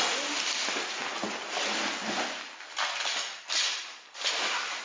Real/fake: real